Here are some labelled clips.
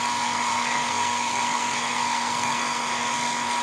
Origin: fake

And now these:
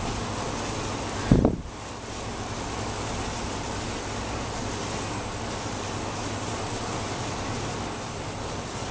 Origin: real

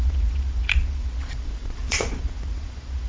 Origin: fake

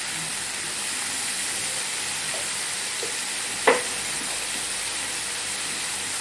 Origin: fake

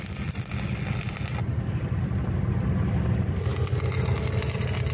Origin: real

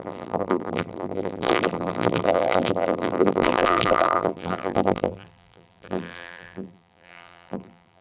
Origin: fake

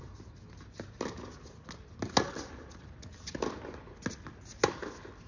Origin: real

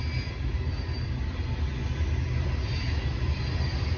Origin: real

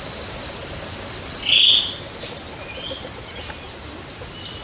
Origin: real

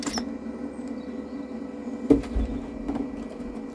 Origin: real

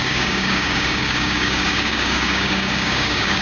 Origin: fake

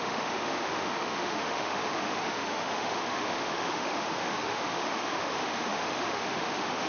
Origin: fake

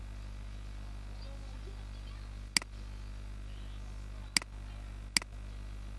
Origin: real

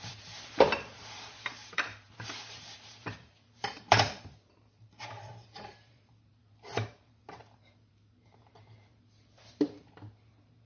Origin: fake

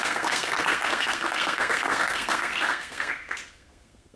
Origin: fake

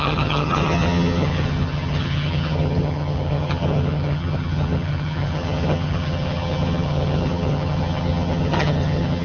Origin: fake